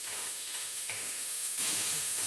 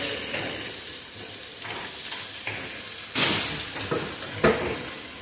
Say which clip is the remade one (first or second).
first